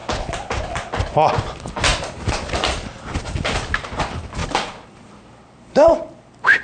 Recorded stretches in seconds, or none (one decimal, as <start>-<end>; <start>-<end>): 0.0-1.9; 4.0-4.4; 6.0-6.6